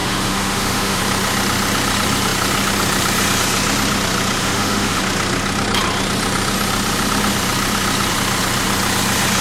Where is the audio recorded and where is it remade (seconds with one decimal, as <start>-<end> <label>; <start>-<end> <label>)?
0.0-1.0 remade; 1.0-4.4 recorded; 4.4-5.0 remade; 5.0-9.4 recorded